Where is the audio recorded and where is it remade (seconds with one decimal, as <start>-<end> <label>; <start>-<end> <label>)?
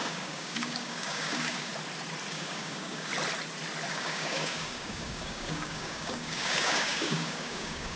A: 0.0-1.7 remade; 1.7-2.3 recorded; 2.3-3.1 remade; 3.1-3.9 recorded; 3.9-8.0 remade